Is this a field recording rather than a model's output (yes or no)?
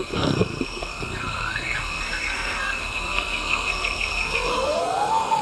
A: no